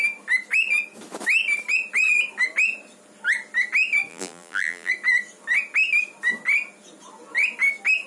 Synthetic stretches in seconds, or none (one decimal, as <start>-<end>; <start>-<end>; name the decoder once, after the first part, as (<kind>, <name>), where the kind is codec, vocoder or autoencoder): 4.1-4.9 (vocoder, BigVGAN v2)